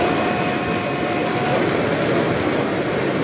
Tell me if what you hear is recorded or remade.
remade